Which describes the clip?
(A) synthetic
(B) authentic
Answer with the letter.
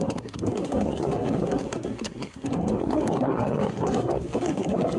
A